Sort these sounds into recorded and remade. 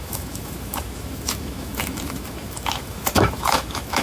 remade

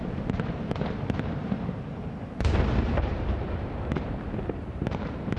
remade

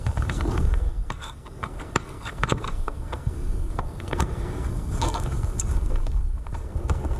remade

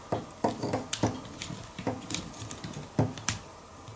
recorded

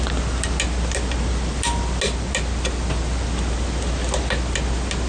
recorded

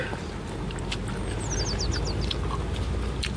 recorded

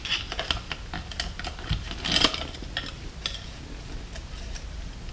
recorded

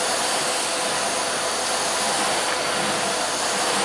recorded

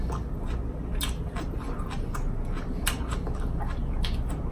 recorded